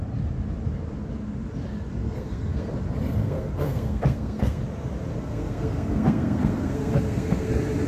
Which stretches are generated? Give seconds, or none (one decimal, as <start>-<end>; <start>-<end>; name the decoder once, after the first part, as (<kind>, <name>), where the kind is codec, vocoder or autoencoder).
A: 2.0-2.7 (codec, SNAC); 3.2-4.6; 5.1-7.5